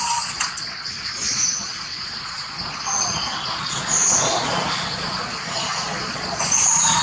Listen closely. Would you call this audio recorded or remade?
remade